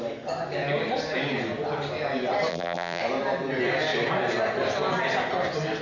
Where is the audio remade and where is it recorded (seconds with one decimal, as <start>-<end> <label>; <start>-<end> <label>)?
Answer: 0.0-2.5 recorded; 2.5-3.0 remade; 3.0-5.8 recorded